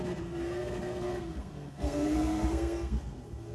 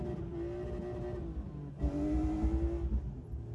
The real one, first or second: second